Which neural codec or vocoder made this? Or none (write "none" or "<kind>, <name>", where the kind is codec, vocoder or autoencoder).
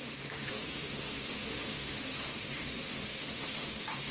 autoencoder, DAC-VAE